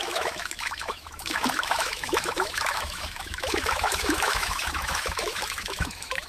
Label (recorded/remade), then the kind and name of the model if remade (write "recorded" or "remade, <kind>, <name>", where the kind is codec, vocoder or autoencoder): remade, autoencoder, DAC-VAE